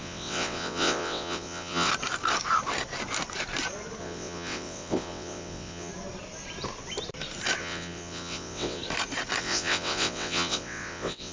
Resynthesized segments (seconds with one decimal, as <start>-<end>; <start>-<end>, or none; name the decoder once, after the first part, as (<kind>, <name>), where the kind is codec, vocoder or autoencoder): 0.0-1.9 (vocoder, WaveNeXt); 4.0-5.9; 7.6-8.8; 9.4-11.3